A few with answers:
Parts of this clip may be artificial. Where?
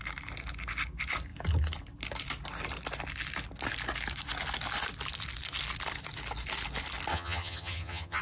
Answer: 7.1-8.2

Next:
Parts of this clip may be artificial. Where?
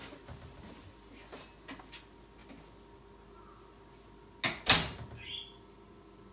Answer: none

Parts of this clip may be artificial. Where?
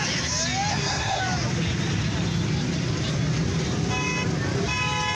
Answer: 0.7-1.2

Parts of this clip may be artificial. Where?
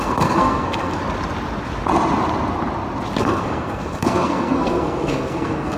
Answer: 0.0-1.0; 3.2-5.8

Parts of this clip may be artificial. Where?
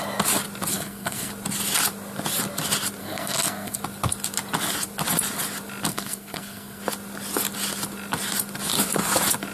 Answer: 0.7-1.3; 3.0-3.8; 5.9-6.8